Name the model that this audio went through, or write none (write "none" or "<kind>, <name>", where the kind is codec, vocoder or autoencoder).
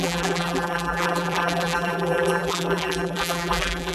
vocoder, BigVGAN v2